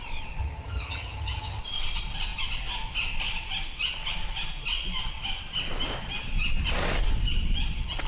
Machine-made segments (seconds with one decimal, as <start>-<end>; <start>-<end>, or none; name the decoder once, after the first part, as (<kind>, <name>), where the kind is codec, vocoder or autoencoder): 0.4-1.6 (vocoder, HiFi-GAN)